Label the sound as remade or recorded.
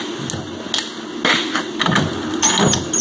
recorded